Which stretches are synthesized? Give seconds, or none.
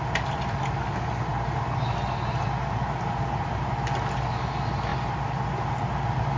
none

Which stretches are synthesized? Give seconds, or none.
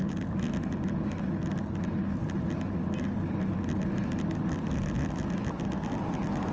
none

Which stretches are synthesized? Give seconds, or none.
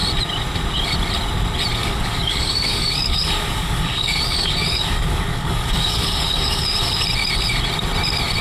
1.8-6.6